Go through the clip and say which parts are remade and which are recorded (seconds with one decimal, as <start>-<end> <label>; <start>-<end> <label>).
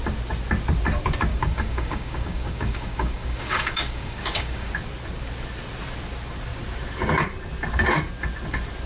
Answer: 0.0-1.3 recorded; 1.3-4.7 remade; 4.7-8.9 recorded